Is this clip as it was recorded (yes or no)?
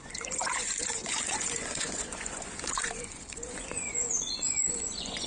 no